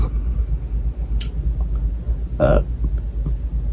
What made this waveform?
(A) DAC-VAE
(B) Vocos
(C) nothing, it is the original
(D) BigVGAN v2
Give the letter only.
C